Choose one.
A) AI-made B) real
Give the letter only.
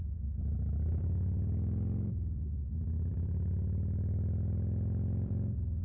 A